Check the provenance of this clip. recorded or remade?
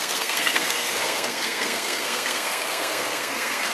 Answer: remade